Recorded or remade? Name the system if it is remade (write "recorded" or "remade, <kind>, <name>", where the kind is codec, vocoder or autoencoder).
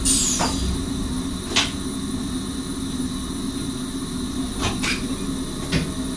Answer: recorded